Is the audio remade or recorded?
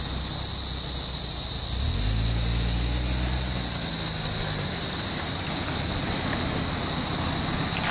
recorded